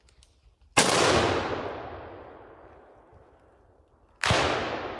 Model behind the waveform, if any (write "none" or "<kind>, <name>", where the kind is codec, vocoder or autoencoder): none